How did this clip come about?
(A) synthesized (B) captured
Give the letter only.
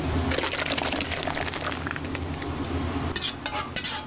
B